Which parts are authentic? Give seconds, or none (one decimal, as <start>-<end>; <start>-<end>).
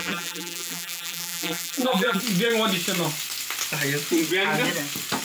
2.2-5.2